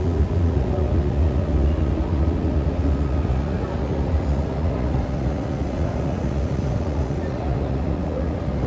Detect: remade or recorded remade